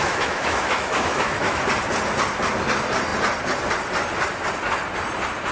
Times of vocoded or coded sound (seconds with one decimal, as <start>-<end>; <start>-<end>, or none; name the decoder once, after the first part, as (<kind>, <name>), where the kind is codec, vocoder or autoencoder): 0.0-1.6 (autoencoder, DAC-VAE)